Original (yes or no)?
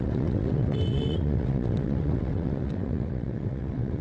no